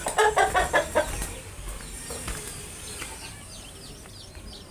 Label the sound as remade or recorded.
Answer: recorded